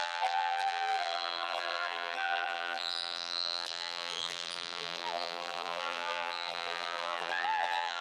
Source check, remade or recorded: remade